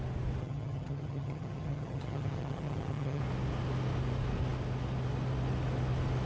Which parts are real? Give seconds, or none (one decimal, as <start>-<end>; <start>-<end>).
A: 0.0-0.4; 3.2-6.3